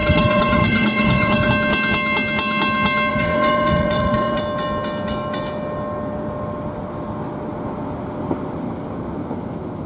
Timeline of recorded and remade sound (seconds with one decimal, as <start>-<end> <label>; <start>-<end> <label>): 0.0-1.5 remade; 1.5-3.1 recorded; 3.1-4.4 remade; 4.4-9.9 recorded